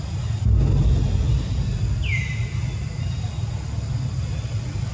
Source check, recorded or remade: recorded